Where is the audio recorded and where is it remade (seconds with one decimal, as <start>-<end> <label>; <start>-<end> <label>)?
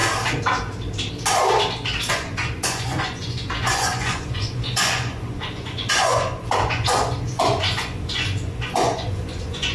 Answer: 0.0-2.1 recorded; 2.1-9.7 remade